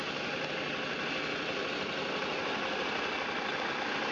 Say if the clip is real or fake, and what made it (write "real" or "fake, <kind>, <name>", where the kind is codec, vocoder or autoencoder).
real